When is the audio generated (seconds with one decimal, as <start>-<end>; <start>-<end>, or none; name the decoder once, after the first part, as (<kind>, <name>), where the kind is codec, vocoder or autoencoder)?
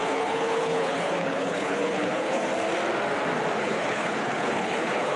0.0-2.5 (codec, HILCodec); 3.6-5.2